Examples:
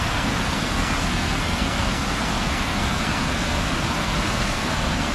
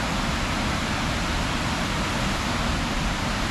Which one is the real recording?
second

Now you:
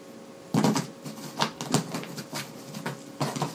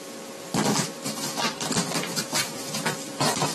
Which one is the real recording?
first